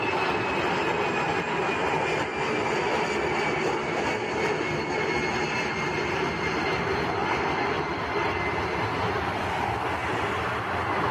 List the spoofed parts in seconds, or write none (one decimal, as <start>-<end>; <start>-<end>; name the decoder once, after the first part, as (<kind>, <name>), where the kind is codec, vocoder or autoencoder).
none